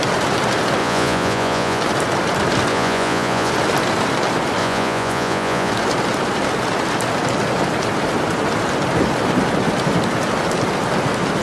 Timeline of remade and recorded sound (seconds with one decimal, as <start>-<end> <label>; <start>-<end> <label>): 0.0-0.8 recorded; 0.8-1.8 remade; 1.8-2.7 recorded; 2.7-3.5 remade; 3.5-4.6 recorded; 4.6-5.7 remade; 5.7-11.4 recorded

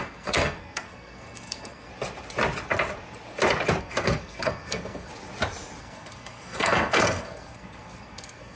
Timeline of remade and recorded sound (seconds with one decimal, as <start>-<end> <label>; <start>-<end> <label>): 0.0-1.9 remade; 1.9-3.8 recorded; 3.8-5.1 remade; 5.1-5.8 recorded; 5.8-8.6 remade

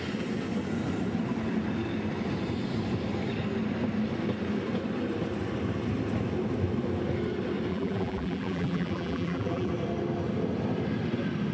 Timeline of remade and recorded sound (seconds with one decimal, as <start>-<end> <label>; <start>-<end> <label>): 0.0-7.7 recorded; 7.7-9.7 remade; 9.7-11.5 recorded

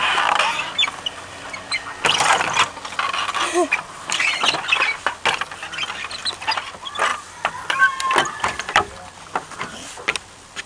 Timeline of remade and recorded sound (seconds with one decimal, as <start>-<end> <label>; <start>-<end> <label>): 0.0-1.6 remade; 1.6-7.1 recorded; 7.1-7.8 remade; 7.8-10.7 recorded

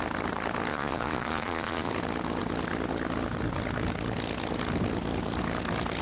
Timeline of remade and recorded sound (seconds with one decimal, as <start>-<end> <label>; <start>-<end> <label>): 0.0-0.7 recorded; 0.7-1.9 remade; 1.9-6.0 recorded